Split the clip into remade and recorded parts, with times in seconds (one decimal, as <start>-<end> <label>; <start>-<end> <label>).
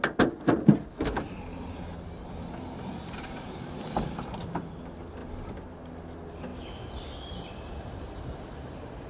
0.0-9.1 recorded